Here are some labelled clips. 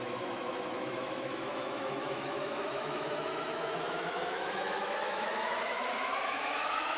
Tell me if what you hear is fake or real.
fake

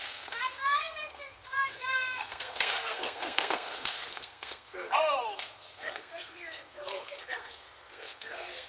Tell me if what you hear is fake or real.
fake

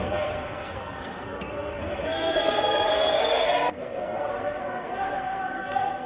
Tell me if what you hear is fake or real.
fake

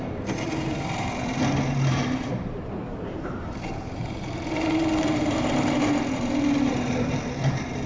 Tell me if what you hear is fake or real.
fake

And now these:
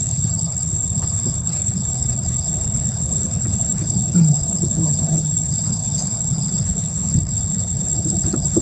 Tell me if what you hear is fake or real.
fake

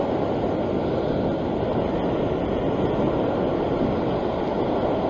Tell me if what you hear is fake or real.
real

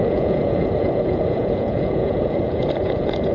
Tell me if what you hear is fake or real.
fake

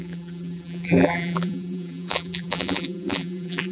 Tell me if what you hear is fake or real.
fake